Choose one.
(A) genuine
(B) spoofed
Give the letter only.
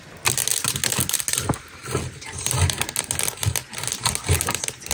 A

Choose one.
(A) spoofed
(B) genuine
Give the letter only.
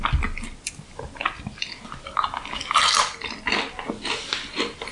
B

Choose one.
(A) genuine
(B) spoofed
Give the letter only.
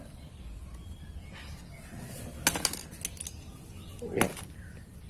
A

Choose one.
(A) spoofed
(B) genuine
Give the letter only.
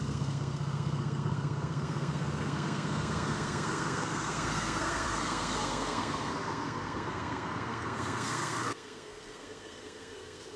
A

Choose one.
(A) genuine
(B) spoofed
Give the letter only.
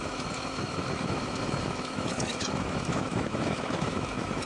B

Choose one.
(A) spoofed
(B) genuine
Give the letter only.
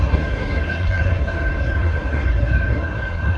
A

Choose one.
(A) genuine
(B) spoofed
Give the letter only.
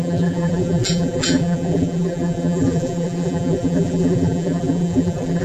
B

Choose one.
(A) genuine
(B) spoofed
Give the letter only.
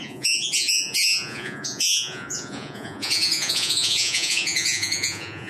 B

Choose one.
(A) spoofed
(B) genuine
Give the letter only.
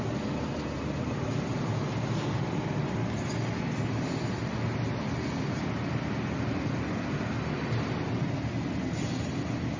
B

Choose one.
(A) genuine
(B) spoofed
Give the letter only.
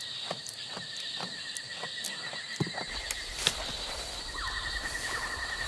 A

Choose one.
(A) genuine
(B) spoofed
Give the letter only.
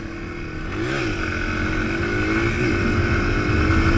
A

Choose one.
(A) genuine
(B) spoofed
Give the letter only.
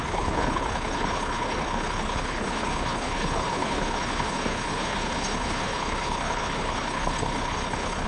B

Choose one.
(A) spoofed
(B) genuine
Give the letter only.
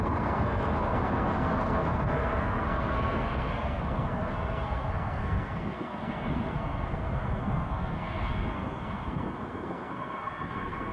A